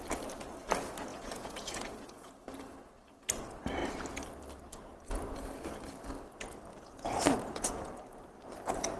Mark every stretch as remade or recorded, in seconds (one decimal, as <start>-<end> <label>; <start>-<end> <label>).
0.0-1.1 recorded; 1.1-2.3 remade; 2.3-6.7 recorded; 6.7-8.0 remade; 8.0-9.0 recorded